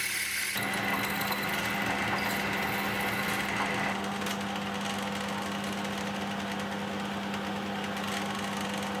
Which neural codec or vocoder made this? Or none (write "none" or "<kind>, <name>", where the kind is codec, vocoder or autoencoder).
none